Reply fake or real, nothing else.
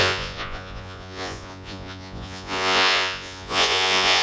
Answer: fake